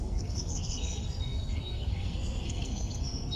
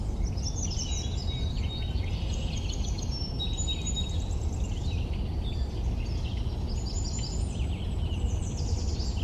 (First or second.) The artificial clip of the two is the first